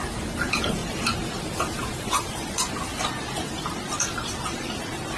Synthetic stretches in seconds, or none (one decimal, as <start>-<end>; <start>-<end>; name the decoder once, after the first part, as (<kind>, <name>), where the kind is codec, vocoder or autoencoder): 0.0-0.8 (vocoder, BigVGAN v2); 1.4-2.9; 3.6-5.2